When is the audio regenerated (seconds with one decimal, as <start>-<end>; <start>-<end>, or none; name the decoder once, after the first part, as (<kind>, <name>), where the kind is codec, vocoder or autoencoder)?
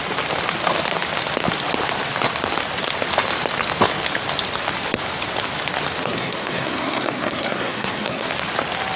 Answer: 6.0-8.3 (codec, SNAC)